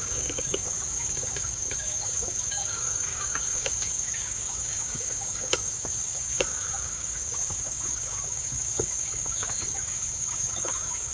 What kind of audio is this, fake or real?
fake